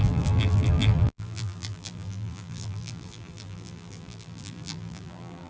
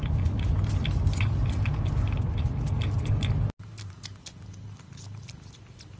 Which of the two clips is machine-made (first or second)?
first